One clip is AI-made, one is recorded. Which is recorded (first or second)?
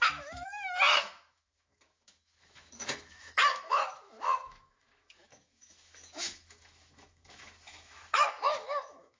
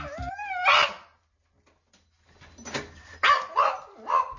second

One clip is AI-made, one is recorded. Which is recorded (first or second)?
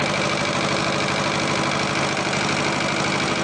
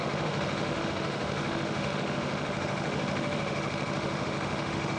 first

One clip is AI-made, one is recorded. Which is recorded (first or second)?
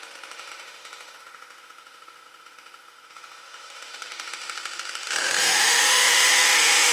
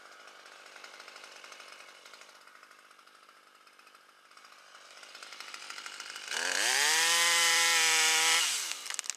second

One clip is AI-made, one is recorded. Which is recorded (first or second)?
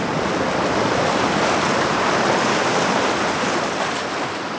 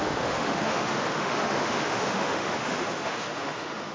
first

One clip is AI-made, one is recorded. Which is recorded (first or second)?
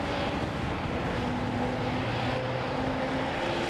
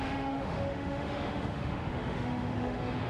first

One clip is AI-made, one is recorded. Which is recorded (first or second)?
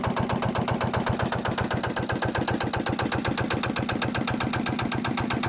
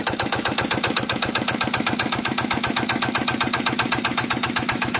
first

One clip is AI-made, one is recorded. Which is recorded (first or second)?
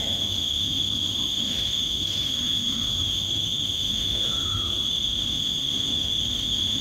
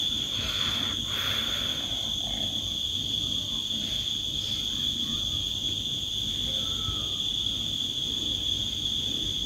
second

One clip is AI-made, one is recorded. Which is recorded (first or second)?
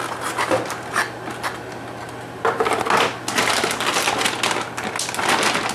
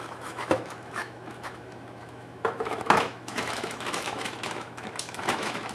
first